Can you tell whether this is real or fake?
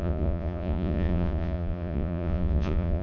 fake